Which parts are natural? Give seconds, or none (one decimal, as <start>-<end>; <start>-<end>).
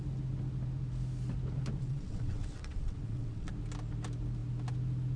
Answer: 0.0-1.8; 3.5-5.2